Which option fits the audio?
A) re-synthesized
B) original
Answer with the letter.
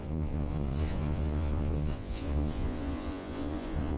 A